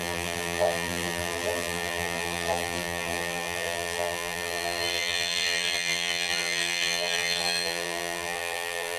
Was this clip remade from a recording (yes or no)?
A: yes